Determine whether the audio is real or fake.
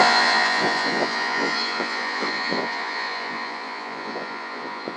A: fake